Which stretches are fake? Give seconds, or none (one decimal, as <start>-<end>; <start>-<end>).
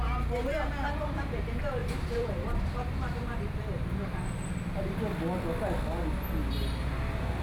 1.8-3.5